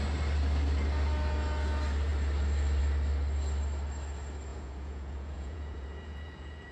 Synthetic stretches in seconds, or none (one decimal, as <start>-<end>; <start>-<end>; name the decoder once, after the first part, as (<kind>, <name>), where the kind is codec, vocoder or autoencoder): 4.5-6.7 (vocoder, Vocos)